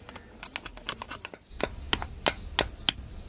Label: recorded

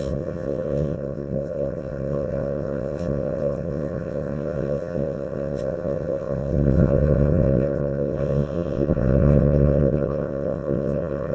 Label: remade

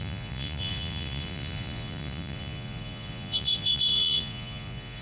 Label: remade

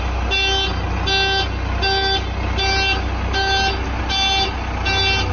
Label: recorded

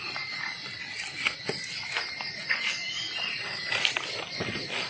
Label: recorded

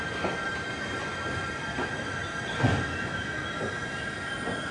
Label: recorded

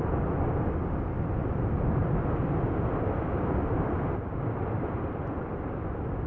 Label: recorded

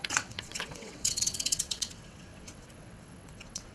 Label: remade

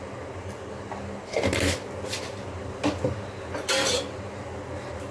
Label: recorded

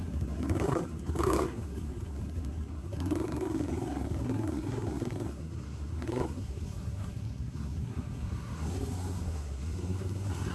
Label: remade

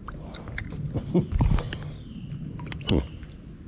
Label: recorded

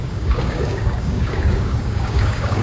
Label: remade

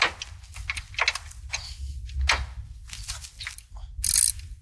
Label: recorded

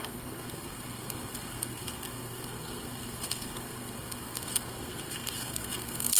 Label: remade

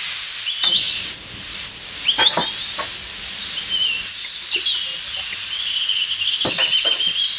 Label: recorded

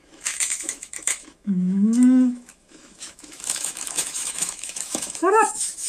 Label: remade